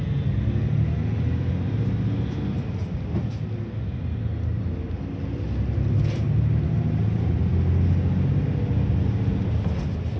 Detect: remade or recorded recorded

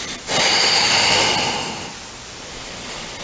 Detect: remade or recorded recorded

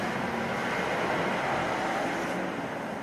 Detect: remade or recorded recorded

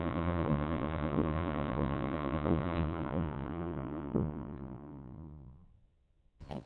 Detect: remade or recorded remade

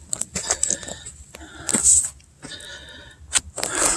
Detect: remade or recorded recorded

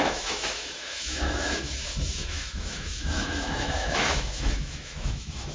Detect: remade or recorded remade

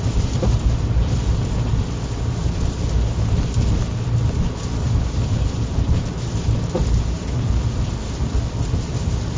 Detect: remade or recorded recorded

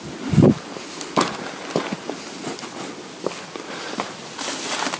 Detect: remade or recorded recorded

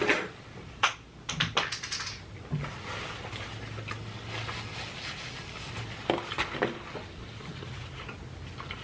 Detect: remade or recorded recorded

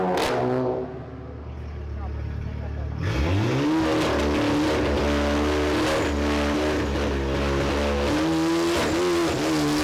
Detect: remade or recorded recorded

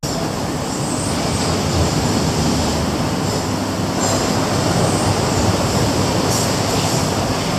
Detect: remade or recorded recorded